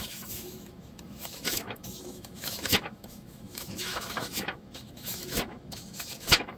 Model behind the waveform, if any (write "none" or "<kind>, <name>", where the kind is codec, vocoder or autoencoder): autoencoder, DAC-VAE